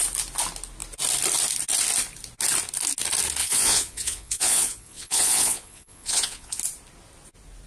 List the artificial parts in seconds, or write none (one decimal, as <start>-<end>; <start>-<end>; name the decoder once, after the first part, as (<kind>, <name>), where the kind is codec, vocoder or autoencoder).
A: 3.4-6.6 (vocoder, Vocos)